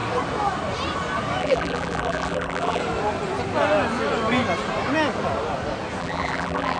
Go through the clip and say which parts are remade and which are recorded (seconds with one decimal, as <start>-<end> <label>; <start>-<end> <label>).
0.0-1.4 recorded; 1.4-2.8 remade; 2.8-6.0 recorded; 6.0-6.8 remade